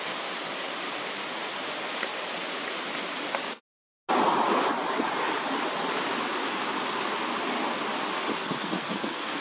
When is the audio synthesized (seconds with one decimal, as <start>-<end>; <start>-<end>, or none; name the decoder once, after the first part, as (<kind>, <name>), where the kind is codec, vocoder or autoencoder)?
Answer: 8.4-9.4 (codec, SNAC)